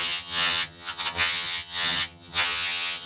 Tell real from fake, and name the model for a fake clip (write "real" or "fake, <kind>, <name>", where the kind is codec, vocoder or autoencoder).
fake, vocoder, HiFi-GAN